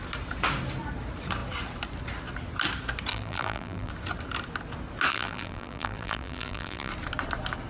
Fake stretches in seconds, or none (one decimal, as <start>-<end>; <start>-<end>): 3.1-3.9; 5.1-6.9